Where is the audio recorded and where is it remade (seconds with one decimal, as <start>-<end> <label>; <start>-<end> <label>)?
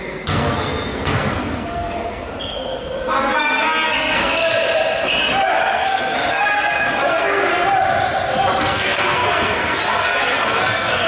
0.0-4.4 remade; 4.4-5.6 recorded; 5.6-7.5 remade; 7.5-8.6 recorded; 8.6-11.1 remade